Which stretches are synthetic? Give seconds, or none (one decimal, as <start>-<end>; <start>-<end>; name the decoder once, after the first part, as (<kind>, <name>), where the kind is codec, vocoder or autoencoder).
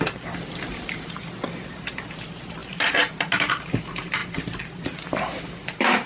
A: none